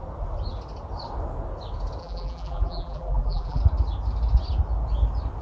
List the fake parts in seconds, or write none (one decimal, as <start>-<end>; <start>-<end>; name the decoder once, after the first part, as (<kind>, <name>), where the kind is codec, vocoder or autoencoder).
2.0-3.6 (vocoder, BigVGAN v2)